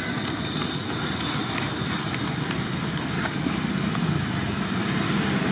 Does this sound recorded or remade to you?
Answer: recorded